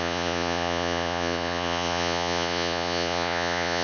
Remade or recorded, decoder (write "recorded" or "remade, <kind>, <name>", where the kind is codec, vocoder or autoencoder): remade, vocoder, Vocos